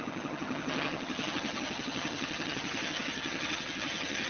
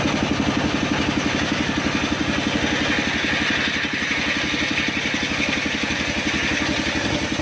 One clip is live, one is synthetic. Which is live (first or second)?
second